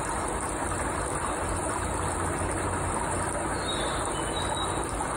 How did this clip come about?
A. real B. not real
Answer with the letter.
A